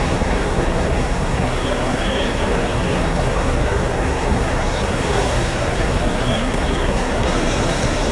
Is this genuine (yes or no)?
no